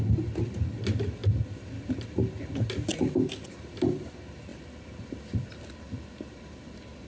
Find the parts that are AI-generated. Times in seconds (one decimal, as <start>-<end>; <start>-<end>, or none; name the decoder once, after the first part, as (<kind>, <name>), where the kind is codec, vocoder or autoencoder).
none